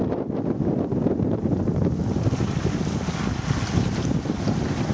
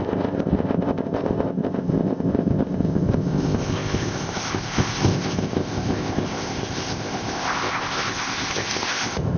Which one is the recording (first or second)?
first